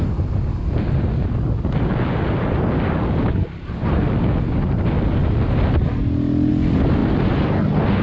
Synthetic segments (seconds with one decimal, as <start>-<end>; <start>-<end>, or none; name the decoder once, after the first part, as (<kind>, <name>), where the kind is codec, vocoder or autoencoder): none